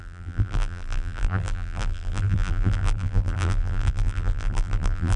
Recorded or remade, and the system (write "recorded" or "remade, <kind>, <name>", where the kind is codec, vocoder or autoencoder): remade, vocoder, BigVGAN v2